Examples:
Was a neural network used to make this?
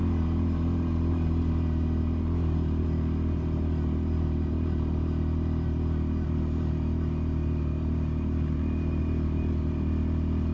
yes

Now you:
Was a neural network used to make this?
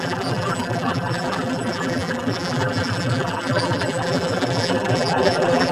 yes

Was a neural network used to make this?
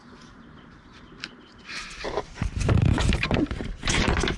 yes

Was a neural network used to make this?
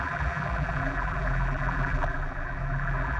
yes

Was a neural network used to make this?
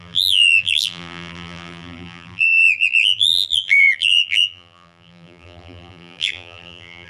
yes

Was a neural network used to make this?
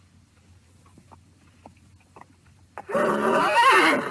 no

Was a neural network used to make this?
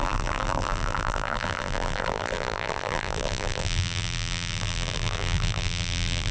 yes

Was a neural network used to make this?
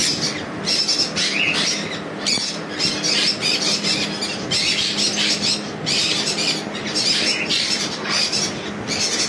no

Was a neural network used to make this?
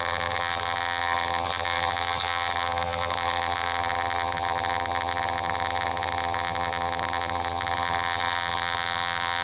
yes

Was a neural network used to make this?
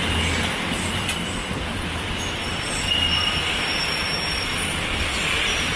yes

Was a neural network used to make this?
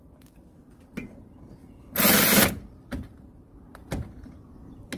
yes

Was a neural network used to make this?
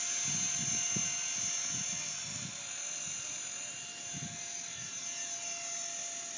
no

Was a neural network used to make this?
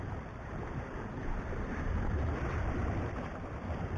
yes